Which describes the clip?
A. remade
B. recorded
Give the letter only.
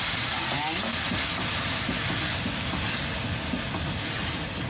B